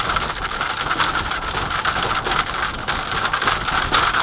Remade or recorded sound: recorded